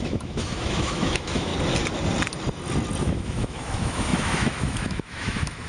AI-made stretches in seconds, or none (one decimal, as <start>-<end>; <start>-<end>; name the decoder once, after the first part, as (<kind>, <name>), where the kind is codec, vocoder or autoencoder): 0.0-1.5 (autoencoder, DAC-VAE); 3.0-5.7